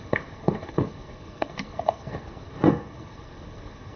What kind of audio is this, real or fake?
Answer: fake